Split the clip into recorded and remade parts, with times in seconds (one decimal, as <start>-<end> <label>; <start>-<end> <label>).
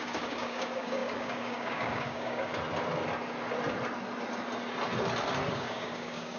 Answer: 0.0-2.5 remade; 2.5-5.5 recorded; 5.5-6.4 remade